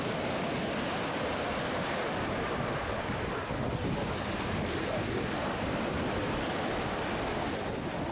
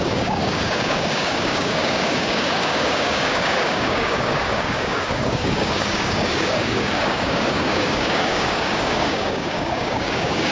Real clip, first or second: first